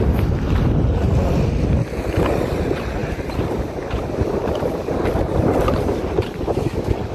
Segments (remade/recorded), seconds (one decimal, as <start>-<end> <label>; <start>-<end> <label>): 0.0-7.1 recorded